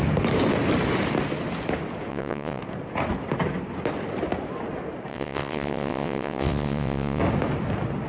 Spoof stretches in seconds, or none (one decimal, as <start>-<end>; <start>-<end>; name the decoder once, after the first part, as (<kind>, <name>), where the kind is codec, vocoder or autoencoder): 2.1-2.6 (vocoder, WaveNeXt); 5.1-7.2